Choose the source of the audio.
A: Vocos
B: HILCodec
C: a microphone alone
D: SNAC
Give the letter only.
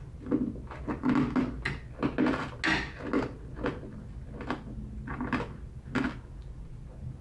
C